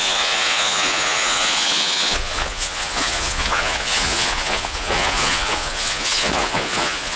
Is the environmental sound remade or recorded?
remade